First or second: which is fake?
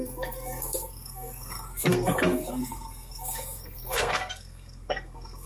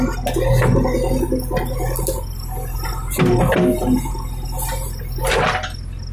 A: first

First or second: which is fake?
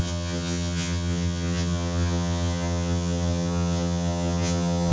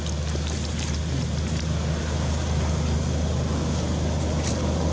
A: first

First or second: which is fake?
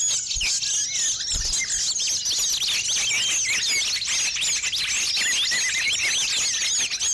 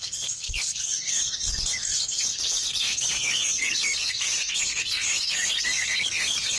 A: second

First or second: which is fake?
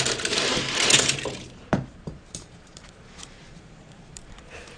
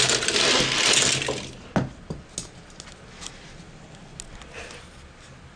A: first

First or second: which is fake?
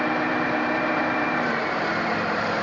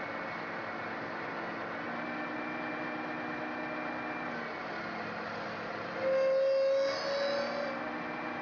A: first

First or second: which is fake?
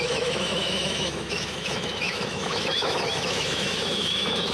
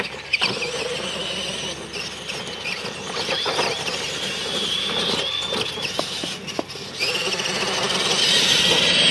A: first